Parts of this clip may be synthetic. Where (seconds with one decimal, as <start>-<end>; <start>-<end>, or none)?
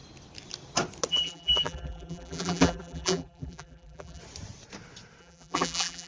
1.1-4.2; 5.2-6.1